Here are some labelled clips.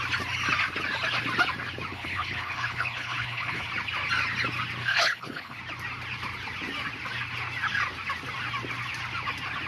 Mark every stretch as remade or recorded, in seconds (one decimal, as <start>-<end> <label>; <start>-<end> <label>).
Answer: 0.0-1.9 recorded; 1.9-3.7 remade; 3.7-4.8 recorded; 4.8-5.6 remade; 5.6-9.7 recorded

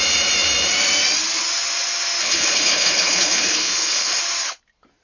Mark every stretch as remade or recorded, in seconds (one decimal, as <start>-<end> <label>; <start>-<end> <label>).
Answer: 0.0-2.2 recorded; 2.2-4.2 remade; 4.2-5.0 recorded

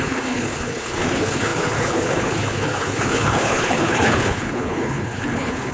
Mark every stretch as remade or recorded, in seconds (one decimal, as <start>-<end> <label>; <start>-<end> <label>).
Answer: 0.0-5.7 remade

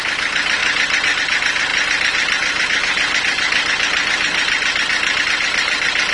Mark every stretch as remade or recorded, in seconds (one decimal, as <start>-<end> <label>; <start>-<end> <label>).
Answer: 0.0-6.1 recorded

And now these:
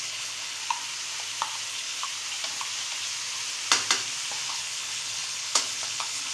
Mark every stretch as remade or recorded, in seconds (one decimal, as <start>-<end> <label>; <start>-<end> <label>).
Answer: 0.0-0.6 remade; 0.6-1.7 recorded; 1.7-2.1 remade; 2.1-4.5 recorded; 4.5-6.3 remade

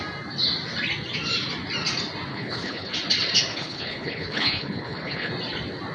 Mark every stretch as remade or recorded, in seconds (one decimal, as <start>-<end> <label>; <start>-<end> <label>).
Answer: 0.0-2.3 recorded; 2.3-2.9 remade; 2.9-3.5 recorded; 3.5-5.3 remade; 5.3-5.9 recorded

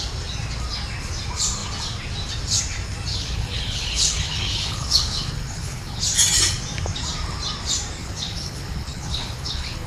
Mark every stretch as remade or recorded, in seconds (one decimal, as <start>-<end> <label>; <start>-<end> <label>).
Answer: 0.0-3.1 recorded; 3.1-6.0 remade; 6.0-8.0 recorded; 8.0-9.9 remade